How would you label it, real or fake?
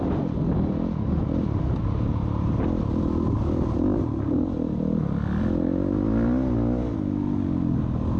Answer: real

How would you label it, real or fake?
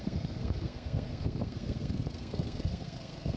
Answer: fake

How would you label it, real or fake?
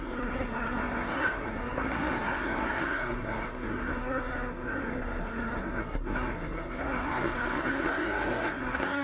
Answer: fake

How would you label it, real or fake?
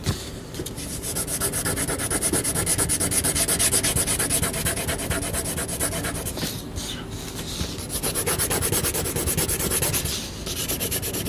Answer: real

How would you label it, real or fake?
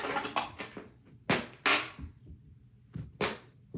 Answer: real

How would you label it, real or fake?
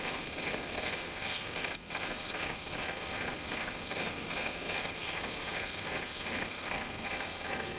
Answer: fake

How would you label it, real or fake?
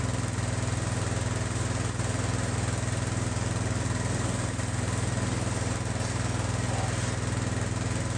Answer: real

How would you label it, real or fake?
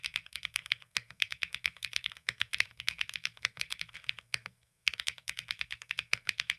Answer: fake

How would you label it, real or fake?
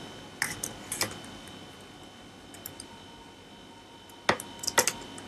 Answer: real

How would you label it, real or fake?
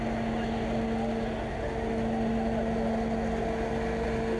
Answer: real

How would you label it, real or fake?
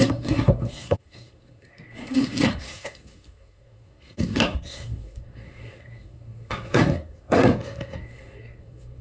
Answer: fake